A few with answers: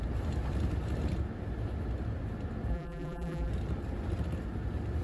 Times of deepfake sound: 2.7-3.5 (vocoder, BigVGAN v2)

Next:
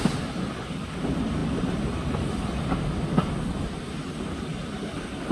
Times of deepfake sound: none

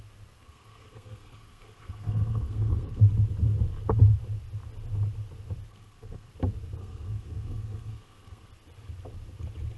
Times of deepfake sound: 0.4-3.0 (codec, SNAC); 5.7-6.3; 6.8-8.5

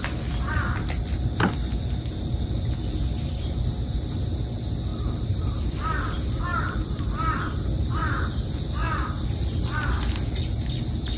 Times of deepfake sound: 4.9-5.7 (vocoder, BigVGAN v2); 6.5-10.7

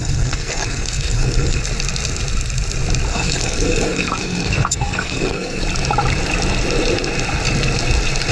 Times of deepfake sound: 0.0-1.6 (codec, SNAC); 3.1-5.6

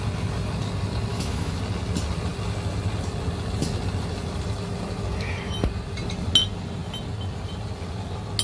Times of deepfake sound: 1.1-1.6 (autoencoder, DAC-VAE)

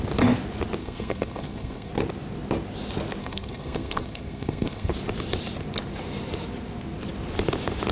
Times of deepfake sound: 0.8-1.9 (codec, SNAC); 3.2-4.9